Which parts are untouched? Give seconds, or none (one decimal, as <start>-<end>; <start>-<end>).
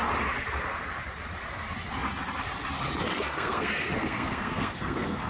0.0-3.1